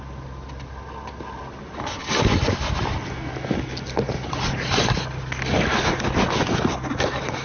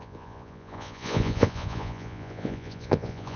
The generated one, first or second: second